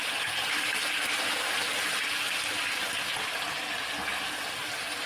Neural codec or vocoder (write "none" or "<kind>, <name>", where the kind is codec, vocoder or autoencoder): none